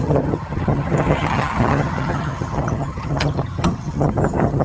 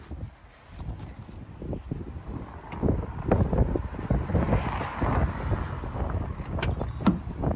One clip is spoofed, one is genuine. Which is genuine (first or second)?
second